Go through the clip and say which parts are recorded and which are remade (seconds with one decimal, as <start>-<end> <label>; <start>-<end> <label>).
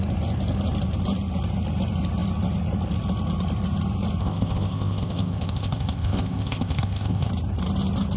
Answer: 0.0-4.2 recorded; 4.2-7.3 remade; 7.3-8.2 recorded